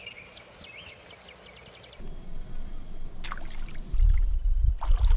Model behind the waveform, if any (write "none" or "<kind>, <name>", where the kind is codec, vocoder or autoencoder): none